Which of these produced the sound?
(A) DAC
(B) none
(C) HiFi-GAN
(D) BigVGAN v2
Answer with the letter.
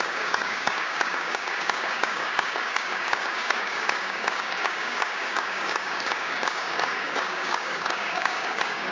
A